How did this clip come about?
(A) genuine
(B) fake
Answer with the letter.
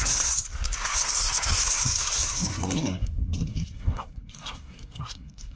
B